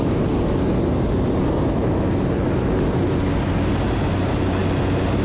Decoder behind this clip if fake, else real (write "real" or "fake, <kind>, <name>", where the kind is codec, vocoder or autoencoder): real